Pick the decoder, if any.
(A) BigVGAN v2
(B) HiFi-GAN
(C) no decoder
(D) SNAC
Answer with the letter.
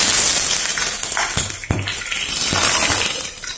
A